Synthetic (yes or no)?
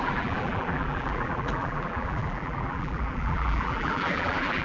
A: yes